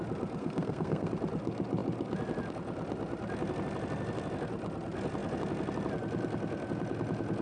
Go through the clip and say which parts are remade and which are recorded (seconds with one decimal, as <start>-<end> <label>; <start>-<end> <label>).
0.0-0.4 recorded; 0.4-1.1 remade; 1.1-7.4 recorded